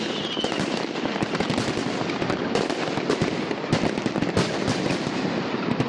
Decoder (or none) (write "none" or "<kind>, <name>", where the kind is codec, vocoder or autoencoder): none